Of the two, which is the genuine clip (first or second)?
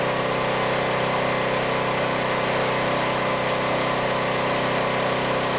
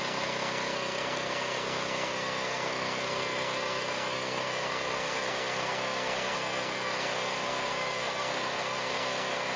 first